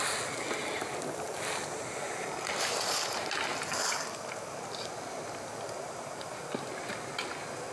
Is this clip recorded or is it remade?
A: recorded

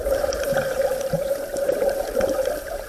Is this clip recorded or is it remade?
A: remade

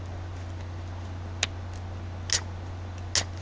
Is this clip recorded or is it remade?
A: recorded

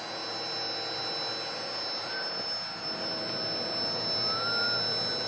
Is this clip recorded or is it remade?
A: recorded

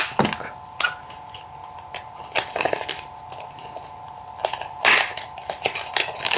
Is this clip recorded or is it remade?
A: recorded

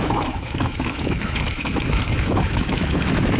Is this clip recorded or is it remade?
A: remade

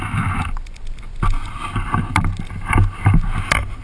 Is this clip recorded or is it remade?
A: recorded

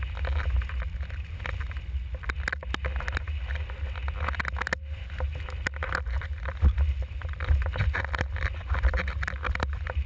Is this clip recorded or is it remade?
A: recorded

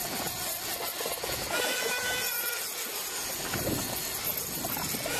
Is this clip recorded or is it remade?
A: recorded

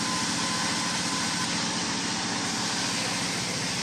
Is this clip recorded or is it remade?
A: recorded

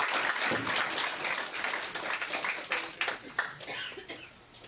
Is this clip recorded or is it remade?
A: recorded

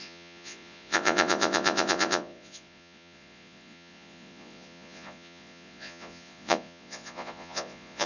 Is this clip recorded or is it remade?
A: remade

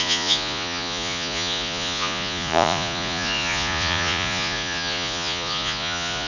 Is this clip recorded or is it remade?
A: remade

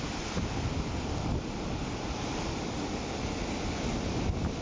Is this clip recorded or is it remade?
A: recorded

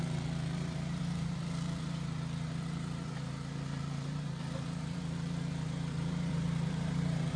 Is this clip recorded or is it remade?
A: remade